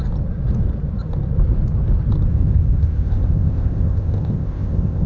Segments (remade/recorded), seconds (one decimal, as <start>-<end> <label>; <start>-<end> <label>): 0.0-2.3 recorded; 2.3-5.1 remade